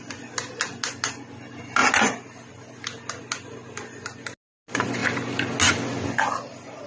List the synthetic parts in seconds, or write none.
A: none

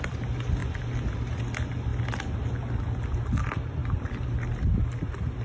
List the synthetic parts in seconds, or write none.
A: none

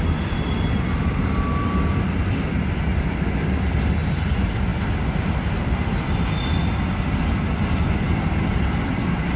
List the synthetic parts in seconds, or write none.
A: none

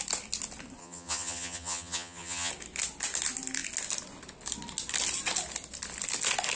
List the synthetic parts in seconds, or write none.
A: 0.8-2.5 (vocoder, HiFi-GAN)

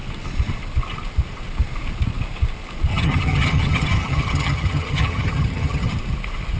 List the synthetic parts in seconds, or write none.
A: 2.9-5.9 (vocoder, HiFi-GAN)

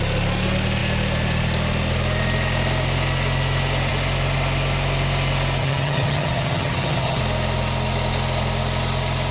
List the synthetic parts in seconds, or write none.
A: 5.6-7.2 (vocoder, HiFi-GAN)

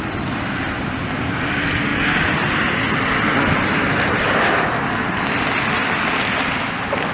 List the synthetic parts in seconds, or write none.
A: none

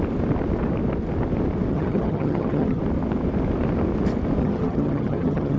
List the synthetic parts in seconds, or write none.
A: 1.7-2.8 (vocoder, HiFi-GAN); 4.4-5.6